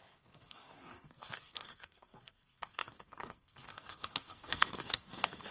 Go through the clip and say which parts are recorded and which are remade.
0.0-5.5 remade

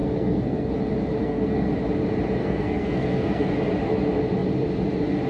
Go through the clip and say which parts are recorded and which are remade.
0.0-0.7 remade; 0.7-1.2 recorded; 1.2-1.7 remade; 1.7-2.4 recorded; 2.4-3.5 remade; 3.5-5.3 recorded

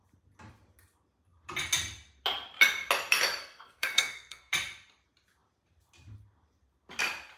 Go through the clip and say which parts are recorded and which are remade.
0.0-3.4 recorded; 3.4-4.5 remade; 4.5-7.4 recorded

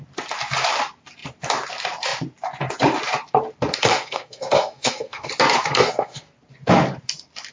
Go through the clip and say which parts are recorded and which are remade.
0.0-3.9 recorded; 3.9-5.3 remade; 5.3-5.7 recorded; 5.7-6.3 remade; 6.3-7.5 recorded

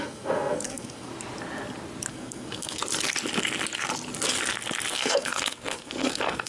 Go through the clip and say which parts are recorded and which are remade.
0.0-1.1 remade; 1.1-2.1 recorded; 2.1-2.8 remade; 2.8-4.9 recorded; 4.9-6.5 remade